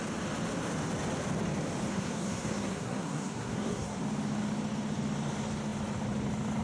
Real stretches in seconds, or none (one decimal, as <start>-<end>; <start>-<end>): 0.0-1.9; 4.0-6.6